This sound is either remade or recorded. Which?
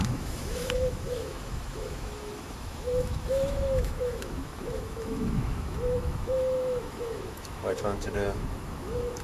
remade